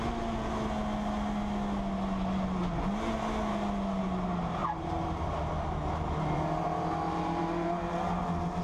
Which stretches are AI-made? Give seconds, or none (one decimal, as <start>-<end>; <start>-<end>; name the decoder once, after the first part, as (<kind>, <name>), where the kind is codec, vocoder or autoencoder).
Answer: 4.6-8.2 (vocoder, BigVGAN v2)